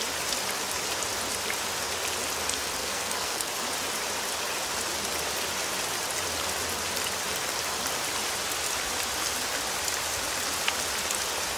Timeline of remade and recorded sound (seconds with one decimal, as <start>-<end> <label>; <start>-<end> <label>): 0.0-2.8 recorded; 2.8-3.5 remade; 3.5-11.6 recorded